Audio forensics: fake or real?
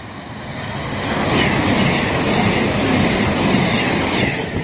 real